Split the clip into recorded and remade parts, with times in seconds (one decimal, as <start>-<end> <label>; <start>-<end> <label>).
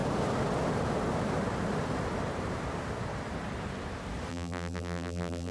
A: 0.0-4.3 recorded; 4.3-5.5 remade